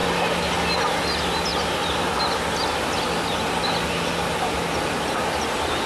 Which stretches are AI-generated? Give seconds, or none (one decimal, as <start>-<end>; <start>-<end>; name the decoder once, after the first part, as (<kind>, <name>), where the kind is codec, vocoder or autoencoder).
none